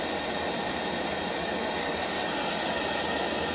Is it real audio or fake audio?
real